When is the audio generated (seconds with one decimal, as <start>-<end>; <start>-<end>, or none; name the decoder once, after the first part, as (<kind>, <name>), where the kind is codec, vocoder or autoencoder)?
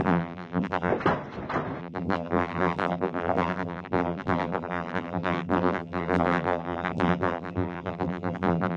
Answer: 0.0-0.9 (vocoder, BigVGAN v2); 1.8-8.8